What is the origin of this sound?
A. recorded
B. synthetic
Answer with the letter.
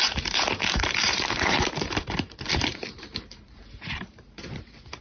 B